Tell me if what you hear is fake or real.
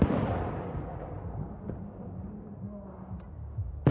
real